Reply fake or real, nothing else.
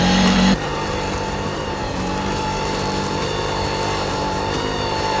fake